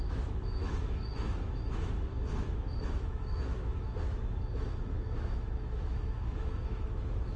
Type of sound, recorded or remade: remade